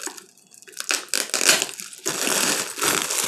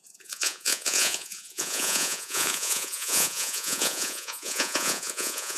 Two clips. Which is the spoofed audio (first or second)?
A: second